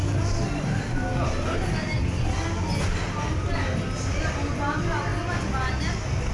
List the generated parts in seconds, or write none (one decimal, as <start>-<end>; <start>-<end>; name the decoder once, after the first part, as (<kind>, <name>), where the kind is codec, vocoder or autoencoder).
none